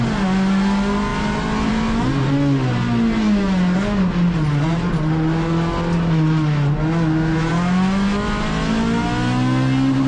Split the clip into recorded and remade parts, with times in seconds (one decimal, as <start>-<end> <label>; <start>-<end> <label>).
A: 0.0-10.1 recorded